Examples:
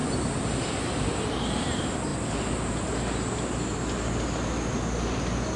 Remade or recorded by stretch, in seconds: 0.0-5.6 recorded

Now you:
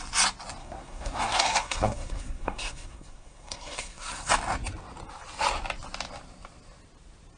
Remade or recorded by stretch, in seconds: 0.0-0.6 recorded; 0.6-4.3 remade; 4.3-7.4 recorded

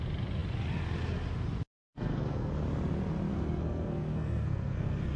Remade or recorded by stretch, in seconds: 0.0-1.7 recorded; 1.7-2.5 remade; 2.5-3.3 recorded; 3.3-5.2 remade

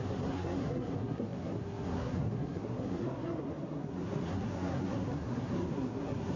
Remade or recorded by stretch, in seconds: 0.0-6.4 remade